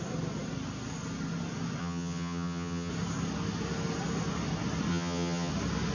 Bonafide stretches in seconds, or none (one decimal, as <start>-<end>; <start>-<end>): 0.0-1.8; 2.9-4.9; 5.5-5.9